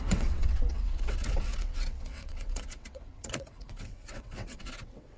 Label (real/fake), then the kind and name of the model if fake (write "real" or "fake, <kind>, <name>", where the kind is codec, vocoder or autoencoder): fake, vocoder, WaveNeXt